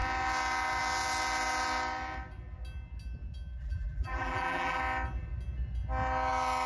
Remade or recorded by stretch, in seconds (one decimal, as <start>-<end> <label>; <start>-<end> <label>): 0.0-3.6 recorded; 3.6-4.8 remade; 4.8-6.7 recorded